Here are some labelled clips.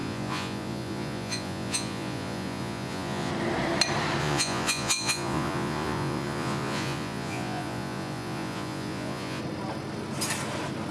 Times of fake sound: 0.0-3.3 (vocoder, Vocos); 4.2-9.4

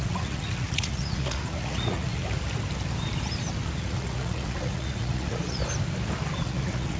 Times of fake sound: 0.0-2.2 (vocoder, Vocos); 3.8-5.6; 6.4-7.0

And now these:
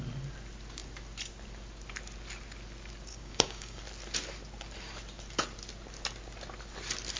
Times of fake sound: 3.1-3.8 (codec, DAC)

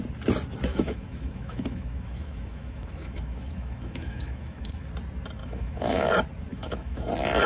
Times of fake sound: 0.7-4.9 (autoencoder, DAC-VAE); 5.4-6.1; 6.5-7.1

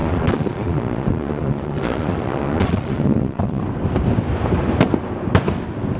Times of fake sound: 0.0-3.6 (vocoder, Vocos)

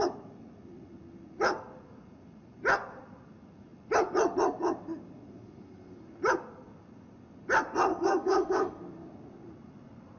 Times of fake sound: 7.9-8.8 (codec, SNAC)

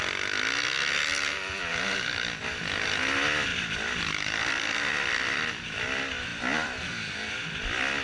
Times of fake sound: 3.5-5.6 (vocoder, BigVGAN v2)